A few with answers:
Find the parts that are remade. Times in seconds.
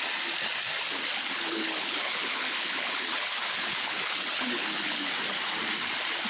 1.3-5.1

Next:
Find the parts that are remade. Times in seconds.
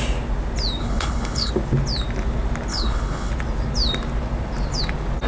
0.8-1.5; 2.7-3.3